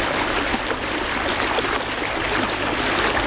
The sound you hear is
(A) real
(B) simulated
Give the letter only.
A